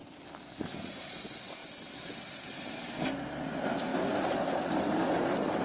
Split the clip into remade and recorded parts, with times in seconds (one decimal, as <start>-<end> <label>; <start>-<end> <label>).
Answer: 0.0-5.6 recorded